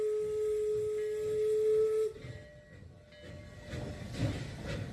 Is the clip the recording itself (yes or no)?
yes